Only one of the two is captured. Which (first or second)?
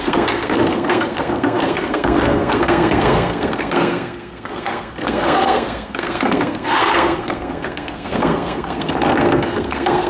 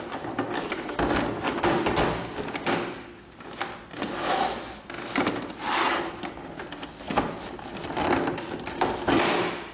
second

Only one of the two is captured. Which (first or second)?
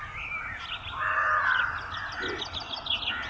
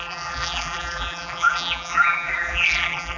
first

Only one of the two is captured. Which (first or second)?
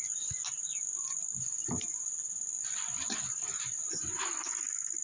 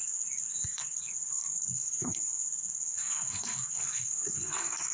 first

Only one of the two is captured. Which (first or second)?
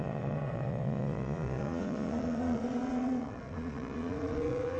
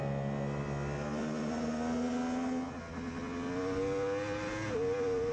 second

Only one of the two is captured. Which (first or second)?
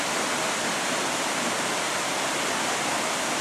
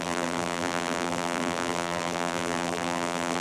first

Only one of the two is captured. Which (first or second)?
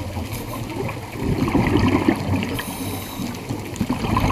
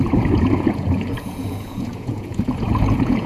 first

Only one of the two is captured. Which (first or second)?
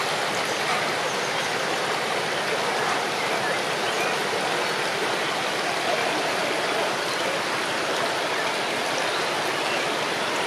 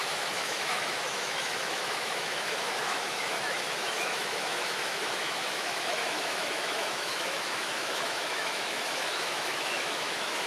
first